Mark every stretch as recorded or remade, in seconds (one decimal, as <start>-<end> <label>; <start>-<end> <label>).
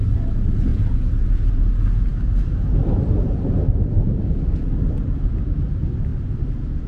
0.0-0.7 recorded; 0.7-1.7 remade; 1.7-6.9 recorded